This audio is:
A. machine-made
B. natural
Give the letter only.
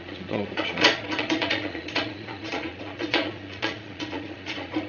A